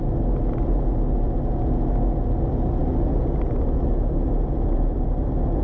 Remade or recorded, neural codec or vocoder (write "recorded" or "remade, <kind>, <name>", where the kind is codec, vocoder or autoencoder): recorded